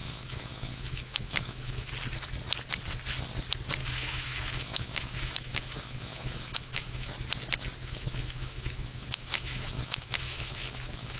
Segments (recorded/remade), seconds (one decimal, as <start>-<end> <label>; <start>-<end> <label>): 0.0-1.9 remade; 1.9-3.8 recorded; 3.8-7.1 remade; 7.1-7.8 recorded; 7.8-11.2 remade